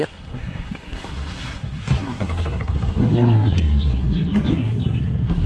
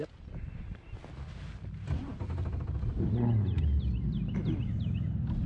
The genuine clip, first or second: second